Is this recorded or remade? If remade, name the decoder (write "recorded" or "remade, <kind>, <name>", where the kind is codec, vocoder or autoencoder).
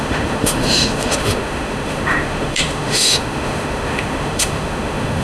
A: remade, autoencoder, DAC-VAE